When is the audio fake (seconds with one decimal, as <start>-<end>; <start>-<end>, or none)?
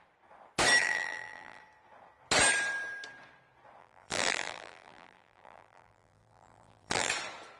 0.8-1.6; 3.8-7.1